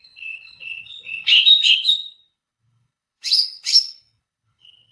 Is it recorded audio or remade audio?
remade